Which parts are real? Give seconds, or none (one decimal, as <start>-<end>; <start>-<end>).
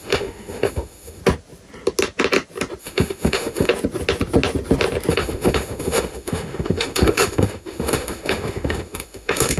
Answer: 1.2-2.8; 3.7-5.1